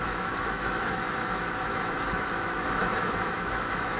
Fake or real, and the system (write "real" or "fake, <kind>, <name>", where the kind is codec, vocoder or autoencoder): fake, autoencoder, DAC-VAE